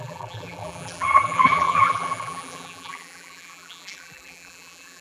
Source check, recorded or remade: remade